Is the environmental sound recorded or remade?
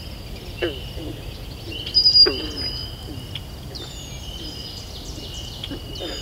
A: recorded